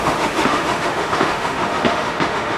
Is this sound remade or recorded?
remade